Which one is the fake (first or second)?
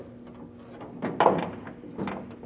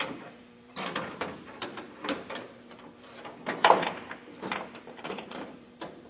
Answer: second